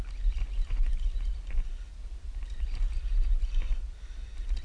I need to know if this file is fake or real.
real